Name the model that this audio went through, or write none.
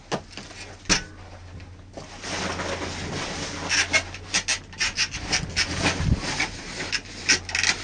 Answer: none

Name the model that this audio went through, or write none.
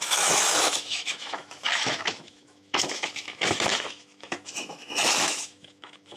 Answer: autoencoder, DAC-VAE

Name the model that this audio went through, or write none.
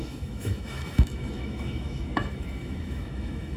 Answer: autoencoder, DAC-VAE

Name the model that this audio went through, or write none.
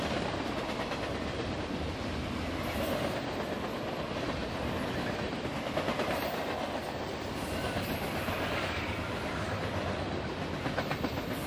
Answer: none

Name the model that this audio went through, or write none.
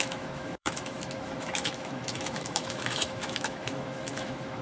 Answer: autoencoder, DAC-VAE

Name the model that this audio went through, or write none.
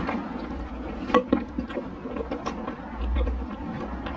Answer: none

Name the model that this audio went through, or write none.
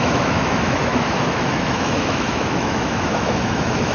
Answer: autoencoder, DAC-VAE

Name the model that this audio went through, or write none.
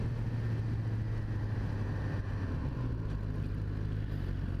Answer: none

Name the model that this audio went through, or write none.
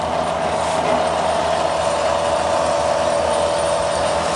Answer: none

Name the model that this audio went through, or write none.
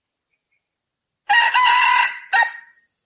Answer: none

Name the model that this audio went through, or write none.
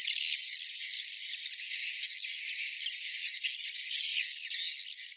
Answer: none